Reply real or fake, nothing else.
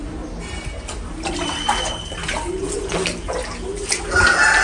real